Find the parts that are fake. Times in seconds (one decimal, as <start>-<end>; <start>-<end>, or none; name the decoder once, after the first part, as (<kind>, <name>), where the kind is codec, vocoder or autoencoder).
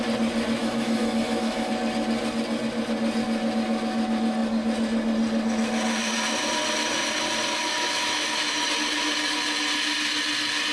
0.6-1.7 (autoencoder, DAC-VAE); 7.7-8.7